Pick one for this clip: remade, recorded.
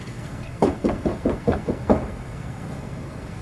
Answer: remade